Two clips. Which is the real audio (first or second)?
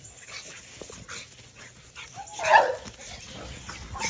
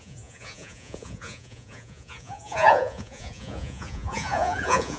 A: first